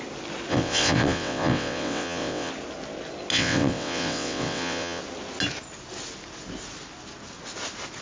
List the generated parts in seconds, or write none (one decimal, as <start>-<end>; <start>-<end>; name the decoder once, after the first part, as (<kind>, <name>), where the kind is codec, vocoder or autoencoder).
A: 0.5-2.5 (vocoder, WaveNeXt); 3.3-5.0

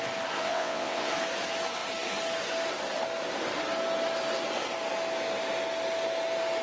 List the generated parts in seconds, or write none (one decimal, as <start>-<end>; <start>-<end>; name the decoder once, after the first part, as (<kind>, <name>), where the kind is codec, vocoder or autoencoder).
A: 0.4-1.1 (vocoder, WaveNeXt)

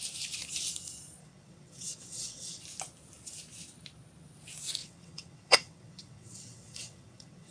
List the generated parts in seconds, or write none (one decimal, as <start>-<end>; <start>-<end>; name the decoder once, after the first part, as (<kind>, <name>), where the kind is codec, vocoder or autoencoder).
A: 1.2-2.6 (vocoder, WaveNeXt); 4.8-7.5